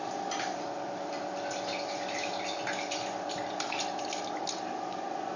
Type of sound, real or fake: real